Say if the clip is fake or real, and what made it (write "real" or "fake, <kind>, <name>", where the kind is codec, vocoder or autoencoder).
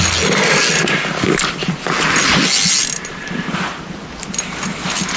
real